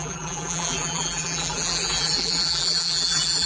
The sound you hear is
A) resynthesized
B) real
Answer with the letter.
A